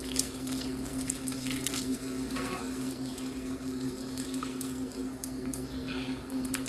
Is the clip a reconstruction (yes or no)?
yes